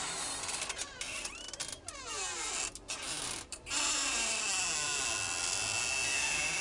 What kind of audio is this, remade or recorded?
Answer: recorded